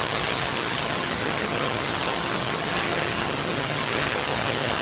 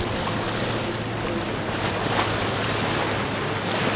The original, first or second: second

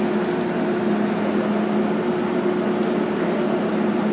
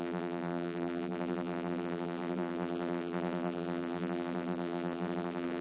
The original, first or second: first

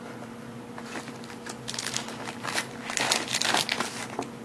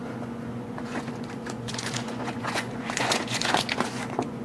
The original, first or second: first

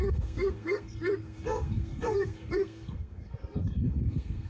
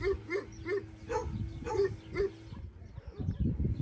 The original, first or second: second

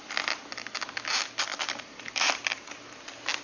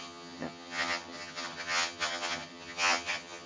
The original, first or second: first